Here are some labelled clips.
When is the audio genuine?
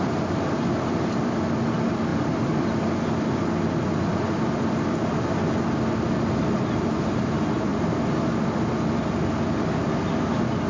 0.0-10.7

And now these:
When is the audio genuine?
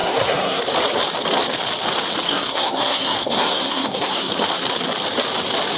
0.6-2.3; 4.3-5.8